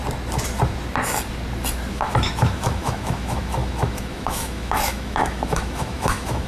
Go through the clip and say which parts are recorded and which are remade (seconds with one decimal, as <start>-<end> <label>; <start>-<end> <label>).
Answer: 0.0-1.9 recorded; 1.9-6.5 remade